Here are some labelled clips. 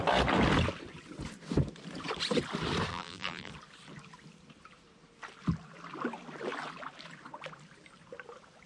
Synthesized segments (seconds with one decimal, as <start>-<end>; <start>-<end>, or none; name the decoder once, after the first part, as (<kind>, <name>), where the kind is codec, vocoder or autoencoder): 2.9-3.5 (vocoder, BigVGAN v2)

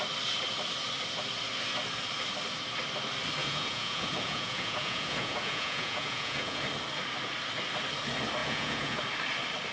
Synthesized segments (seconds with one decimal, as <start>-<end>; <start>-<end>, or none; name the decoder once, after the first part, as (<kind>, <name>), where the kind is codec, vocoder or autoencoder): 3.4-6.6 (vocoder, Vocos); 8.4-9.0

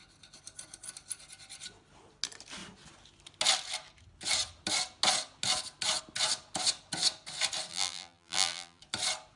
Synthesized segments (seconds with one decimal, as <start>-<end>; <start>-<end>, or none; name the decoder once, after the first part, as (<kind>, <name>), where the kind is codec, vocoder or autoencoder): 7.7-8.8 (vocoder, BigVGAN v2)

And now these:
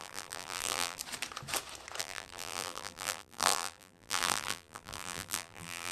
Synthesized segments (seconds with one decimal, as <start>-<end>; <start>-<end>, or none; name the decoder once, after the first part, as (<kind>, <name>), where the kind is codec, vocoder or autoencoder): 0.0-1.0 (vocoder, BigVGAN v2); 2.0-5.9

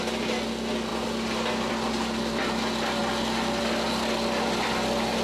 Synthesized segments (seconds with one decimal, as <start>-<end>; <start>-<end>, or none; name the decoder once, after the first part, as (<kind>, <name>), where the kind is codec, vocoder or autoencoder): none

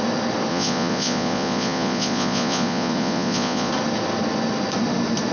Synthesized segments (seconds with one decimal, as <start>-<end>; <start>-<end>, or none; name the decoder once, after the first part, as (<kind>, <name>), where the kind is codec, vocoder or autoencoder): 0.5-3.7 (vocoder, Vocos)

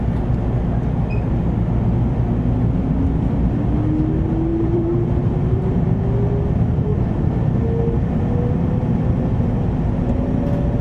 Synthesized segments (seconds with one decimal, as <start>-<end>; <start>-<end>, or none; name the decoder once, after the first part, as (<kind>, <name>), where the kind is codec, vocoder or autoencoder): 4.5-6.0 (vocoder, BigVGAN v2)